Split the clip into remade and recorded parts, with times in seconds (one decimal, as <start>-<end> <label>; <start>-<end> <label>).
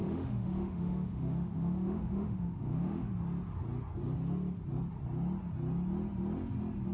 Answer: 0.0-3.1 remade; 3.1-6.9 recorded